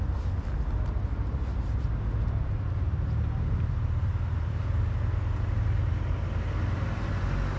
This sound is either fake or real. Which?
real